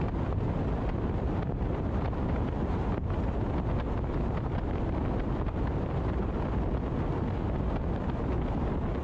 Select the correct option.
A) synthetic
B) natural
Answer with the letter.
B